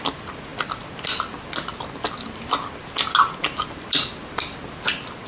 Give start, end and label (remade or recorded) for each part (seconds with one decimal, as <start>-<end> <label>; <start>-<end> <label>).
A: 0.0-5.3 recorded